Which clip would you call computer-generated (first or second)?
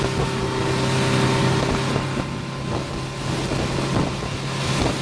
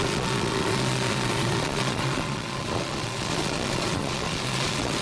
second